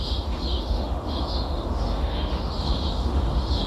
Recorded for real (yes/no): no